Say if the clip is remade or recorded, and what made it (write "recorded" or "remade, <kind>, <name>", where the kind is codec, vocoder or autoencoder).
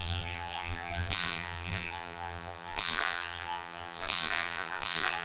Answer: remade, vocoder, BigVGAN v2